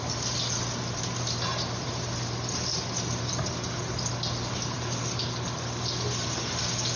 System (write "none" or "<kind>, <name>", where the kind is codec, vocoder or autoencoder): none